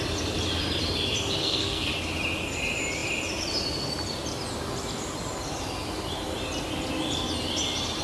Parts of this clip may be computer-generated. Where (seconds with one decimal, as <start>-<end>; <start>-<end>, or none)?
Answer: 1.4-2.0